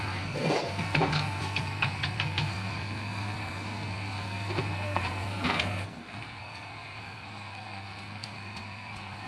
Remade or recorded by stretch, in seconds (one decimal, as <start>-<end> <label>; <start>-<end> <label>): 0.0-9.3 remade